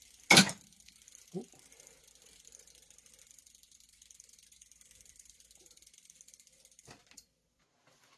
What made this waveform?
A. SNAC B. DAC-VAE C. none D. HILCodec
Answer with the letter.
C